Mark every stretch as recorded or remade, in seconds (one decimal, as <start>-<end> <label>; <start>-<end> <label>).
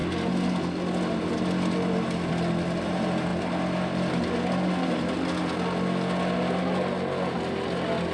0.0-8.1 recorded